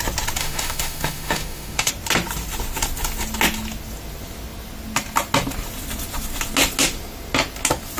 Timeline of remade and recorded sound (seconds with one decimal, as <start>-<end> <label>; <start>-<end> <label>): 0.0-0.4 recorded; 0.4-1.9 remade; 1.9-8.0 recorded